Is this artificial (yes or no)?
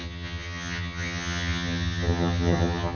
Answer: yes